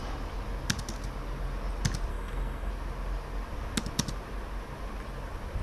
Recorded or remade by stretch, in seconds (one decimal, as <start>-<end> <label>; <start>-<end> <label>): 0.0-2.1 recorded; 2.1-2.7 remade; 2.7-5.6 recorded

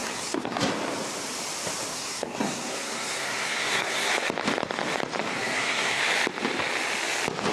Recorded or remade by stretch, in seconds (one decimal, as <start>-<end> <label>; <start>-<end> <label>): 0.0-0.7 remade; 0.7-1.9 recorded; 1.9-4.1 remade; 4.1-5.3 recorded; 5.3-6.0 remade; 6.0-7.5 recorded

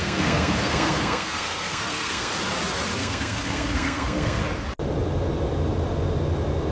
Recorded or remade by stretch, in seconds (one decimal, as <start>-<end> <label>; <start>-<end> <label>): 0.0-2.3 remade; 2.3-3.0 recorded; 3.0-4.4 remade; 4.4-6.7 recorded

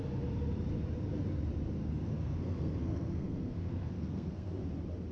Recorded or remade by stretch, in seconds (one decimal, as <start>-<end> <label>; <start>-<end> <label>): 0.0-1.8 recorded; 1.8-4.6 remade; 4.6-5.1 recorded